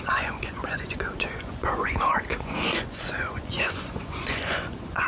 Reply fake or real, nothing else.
fake